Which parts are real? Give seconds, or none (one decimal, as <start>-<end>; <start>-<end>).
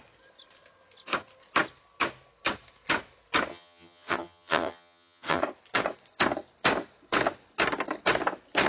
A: 0.0-3.5; 5.4-8.7